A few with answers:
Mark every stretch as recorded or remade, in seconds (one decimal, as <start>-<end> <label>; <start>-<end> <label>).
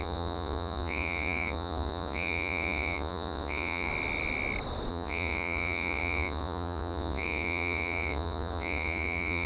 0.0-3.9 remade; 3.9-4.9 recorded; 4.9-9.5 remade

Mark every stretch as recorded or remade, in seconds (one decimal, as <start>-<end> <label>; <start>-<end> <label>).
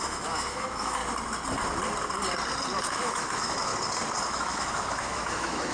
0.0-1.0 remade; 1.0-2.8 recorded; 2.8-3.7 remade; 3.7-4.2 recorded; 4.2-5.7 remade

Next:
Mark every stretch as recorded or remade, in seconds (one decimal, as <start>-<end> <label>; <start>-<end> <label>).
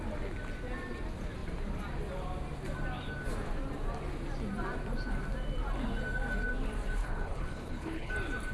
0.0-7.0 recorded; 7.0-8.1 remade; 8.1-8.5 recorded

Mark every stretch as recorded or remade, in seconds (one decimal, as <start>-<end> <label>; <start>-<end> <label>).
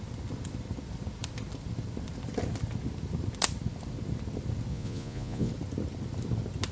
0.0-4.7 recorded; 4.7-5.5 remade; 5.5-6.7 recorded